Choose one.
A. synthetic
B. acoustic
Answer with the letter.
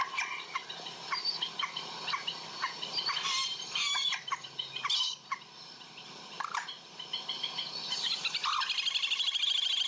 B